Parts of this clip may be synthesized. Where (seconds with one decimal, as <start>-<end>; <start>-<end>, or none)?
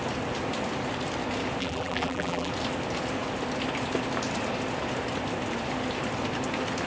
1.6-2.5